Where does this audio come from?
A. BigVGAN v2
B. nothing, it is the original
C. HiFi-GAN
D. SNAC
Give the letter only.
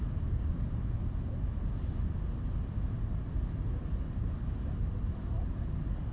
B